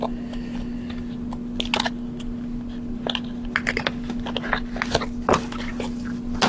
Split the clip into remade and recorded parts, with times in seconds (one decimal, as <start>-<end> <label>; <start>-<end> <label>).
0.0-6.5 recorded

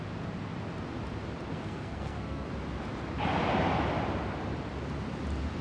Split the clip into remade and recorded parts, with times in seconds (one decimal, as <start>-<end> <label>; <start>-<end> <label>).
0.0-1.5 recorded; 1.5-2.5 remade; 2.5-5.6 recorded

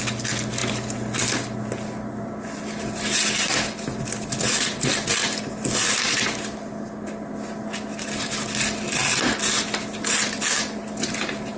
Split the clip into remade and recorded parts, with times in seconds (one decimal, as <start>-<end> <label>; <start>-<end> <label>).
0.0-11.6 recorded

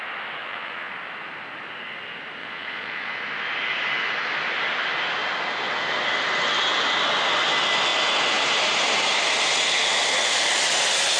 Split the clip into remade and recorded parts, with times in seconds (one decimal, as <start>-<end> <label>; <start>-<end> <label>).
0.0-0.4 recorded; 0.4-0.9 remade; 0.9-2.4 recorded; 2.4-3.1 remade; 3.1-11.2 recorded

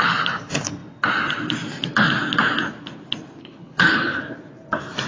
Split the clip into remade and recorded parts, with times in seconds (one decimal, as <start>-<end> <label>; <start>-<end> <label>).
0.0-3.4 recorded; 3.4-4.2 remade; 4.2-5.1 recorded

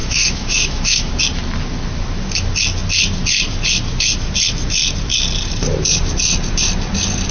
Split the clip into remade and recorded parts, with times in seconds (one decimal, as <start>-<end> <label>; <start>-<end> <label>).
0.0-1.1 remade; 1.1-7.3 recorded

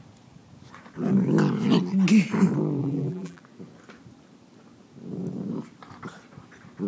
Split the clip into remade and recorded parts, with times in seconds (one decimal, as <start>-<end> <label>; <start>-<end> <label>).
0.0-2.8 recorded; 2.8-3.4 remade; 3.4-6.9 recorded